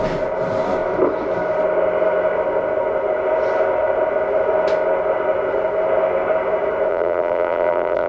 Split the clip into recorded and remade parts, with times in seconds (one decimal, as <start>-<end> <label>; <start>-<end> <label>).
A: 0.0-6.9 recorded; 6.9-8.1 remade